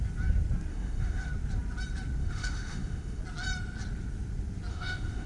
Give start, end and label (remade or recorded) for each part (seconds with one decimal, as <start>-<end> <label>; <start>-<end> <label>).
0.0-0.7 recorded; 0.7-1.3 remade; 1.3-2.2 recorded; 2.2-3.2 remade; 3.2-4.7 recorded; 4.7-5.3 remade